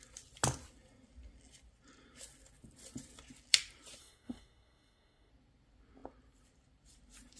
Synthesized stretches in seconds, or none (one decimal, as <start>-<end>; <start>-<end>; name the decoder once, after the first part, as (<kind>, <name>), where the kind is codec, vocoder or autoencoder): 4.0-5.3 (codec, SNAC)